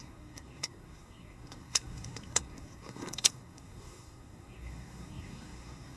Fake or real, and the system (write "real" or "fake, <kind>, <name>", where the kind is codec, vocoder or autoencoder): fake, codec, SNAC